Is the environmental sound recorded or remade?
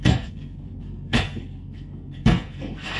remade